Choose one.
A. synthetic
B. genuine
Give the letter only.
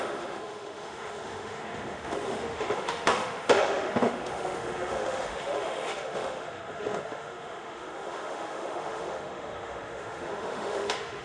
A